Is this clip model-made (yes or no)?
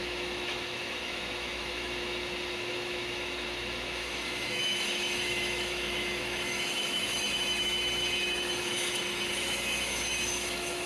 yes